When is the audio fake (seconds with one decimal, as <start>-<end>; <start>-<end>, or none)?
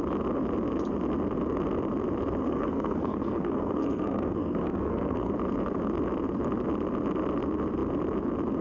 2.4-5.3